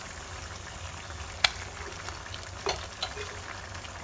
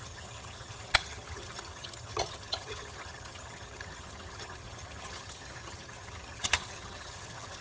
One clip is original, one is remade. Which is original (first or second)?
first